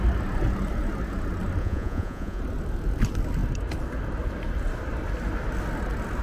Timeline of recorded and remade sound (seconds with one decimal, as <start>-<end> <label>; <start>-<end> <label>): 0.0-1.6 recorded; 1.6-2.4 remade; 2.4-6.2 recorded